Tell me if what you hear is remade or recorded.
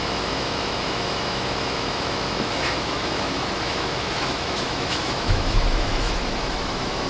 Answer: remade